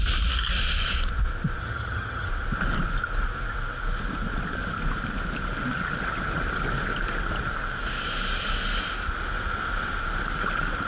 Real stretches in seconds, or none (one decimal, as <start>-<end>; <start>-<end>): 0.0-1.6; 2.3-10.9